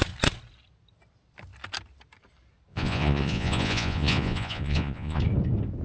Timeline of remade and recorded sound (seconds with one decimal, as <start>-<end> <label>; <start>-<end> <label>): 0.0-2.7 recorded; 2.7-5.2 remade; 5.2-5.8 recorded